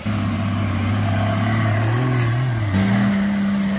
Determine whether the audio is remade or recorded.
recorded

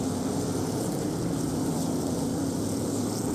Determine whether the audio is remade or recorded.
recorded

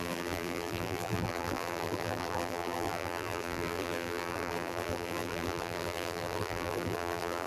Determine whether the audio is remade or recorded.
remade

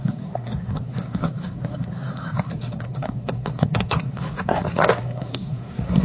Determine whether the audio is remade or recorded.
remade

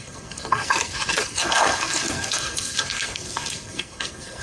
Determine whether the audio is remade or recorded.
remade